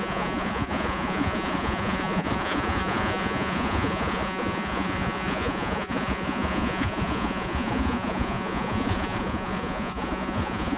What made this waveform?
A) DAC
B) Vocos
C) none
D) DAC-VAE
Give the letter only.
B